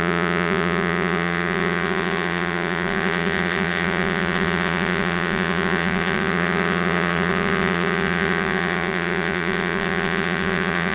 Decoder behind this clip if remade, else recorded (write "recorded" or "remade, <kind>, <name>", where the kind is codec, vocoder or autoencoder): remade, vocoder, Vocos